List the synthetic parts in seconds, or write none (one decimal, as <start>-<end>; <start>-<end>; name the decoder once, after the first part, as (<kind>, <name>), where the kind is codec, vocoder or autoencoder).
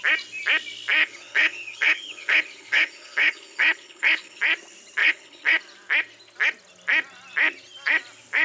1.0-4.4 (codec, HILCodec); 5.0-5.6